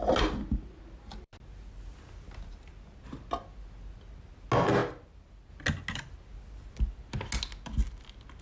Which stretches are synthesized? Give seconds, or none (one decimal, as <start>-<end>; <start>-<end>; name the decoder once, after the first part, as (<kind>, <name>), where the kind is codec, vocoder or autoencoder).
none